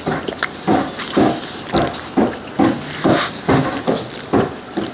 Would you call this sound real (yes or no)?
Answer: yes